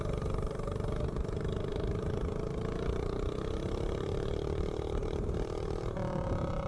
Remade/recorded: remade